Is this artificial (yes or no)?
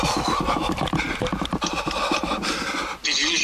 no